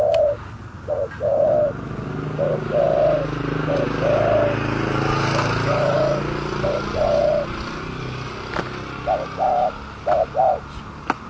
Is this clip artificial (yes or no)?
no